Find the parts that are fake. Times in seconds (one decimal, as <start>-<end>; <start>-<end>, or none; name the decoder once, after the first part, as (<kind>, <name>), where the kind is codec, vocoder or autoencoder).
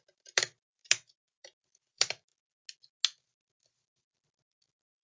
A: 0.0-2.3 (vocoder, BigVGAN v2); 3.2-5.0